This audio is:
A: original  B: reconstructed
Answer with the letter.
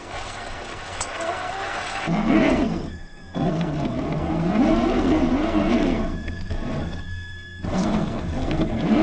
B